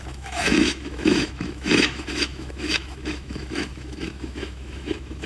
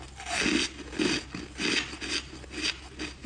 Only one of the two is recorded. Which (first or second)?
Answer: second